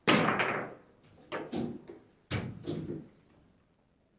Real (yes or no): yes